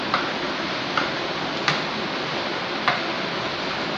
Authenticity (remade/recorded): recorded